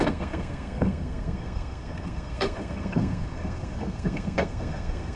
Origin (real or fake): fake